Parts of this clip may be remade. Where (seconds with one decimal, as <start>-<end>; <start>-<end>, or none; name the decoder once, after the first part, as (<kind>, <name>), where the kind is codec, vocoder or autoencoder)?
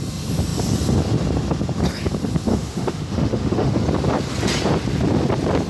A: 2.5-3.7 (autoencoder, DAC-VAE)